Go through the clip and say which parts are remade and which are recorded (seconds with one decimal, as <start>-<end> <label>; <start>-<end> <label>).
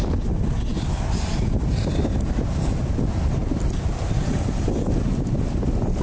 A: 0.0-3.4 recorded; 3.4-4.5 remade; 4.5-6.0 recorded